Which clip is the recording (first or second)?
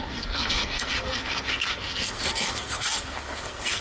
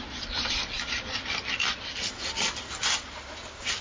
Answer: second